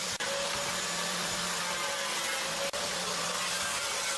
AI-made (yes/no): no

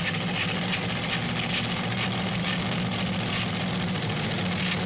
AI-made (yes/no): no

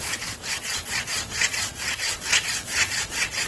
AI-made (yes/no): yes